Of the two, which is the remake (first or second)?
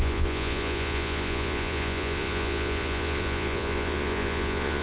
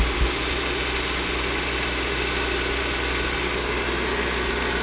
first